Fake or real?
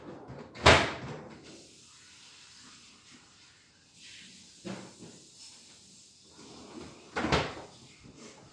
real